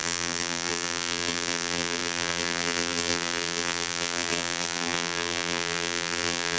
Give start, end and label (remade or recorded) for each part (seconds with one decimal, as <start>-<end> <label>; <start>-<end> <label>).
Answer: 0.0-6.6 remade